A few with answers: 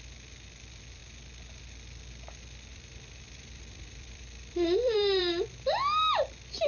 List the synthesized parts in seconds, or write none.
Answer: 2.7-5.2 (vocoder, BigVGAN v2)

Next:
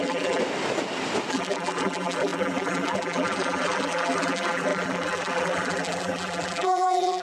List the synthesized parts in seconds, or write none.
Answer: 0.0-0.4 (vocoder, BigVGAN v2); 1.3-7.2

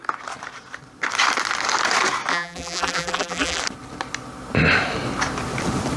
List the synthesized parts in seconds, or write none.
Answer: 2.3-3.6 (vocoder, BigVGAN v2)

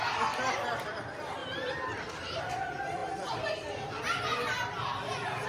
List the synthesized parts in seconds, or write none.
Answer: 1.4-2.4 (vocoder, BigVGAN v2); 3.0-4.0